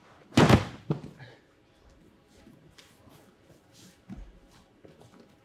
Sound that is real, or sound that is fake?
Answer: real